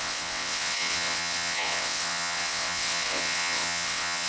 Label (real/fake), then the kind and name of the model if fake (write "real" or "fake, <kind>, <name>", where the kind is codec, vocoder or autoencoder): fake, vocoder, WaveNeXt